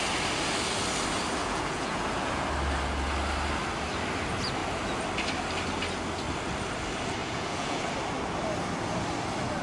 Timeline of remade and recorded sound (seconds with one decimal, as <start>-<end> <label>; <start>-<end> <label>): 0.0-1.4 recorded; 1.4-2.4 remade; 2.4-7.2 recorded; 7.2-7.8 remade; 7.8-9.6 recorded

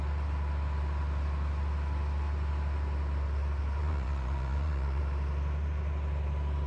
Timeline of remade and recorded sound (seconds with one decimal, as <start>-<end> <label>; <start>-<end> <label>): 0.0-3.8 recorded; 3.8-5.0 remade; 5.0-6.7 recorded

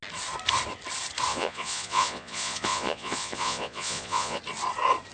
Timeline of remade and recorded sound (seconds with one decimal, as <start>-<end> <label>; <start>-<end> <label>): 0.0-1.3 recorded; 1.3-4.4 remade; 4.4-5.1 recorded

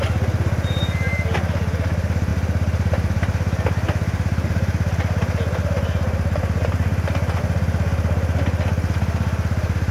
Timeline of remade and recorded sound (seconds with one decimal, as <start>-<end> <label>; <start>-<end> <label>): 0.0-9.9 recorded

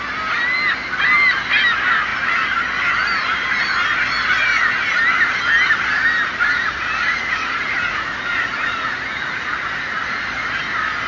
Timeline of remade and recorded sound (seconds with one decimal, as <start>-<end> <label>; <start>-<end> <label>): 0.0-6.3 recorded; 6.3-10.3 remade; 10.3-11.1 recorded